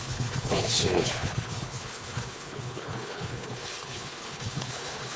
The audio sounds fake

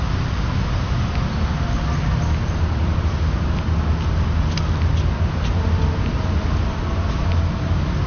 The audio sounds real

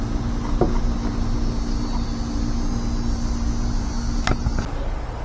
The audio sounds real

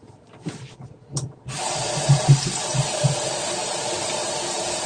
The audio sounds real